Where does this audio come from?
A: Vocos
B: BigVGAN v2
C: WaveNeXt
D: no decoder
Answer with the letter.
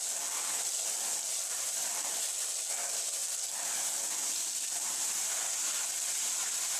D